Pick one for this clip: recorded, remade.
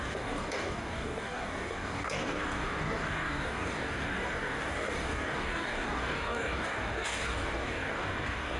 remade